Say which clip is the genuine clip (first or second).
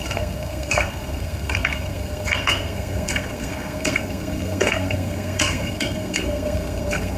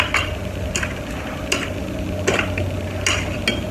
second